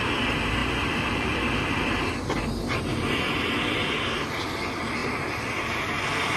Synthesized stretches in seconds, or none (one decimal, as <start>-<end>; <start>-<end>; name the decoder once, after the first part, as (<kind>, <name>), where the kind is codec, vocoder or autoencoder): 0.6-1.4 (vocoder, BigVGAN v2)